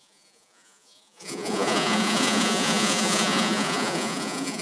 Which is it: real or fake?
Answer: fake